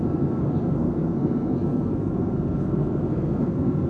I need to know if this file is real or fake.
fake